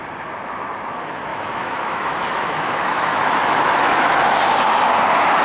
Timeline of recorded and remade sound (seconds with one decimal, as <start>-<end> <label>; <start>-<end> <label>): 0.0-1.3 recorded; 1.3-4.1 remade; 4.1-5.4 recorded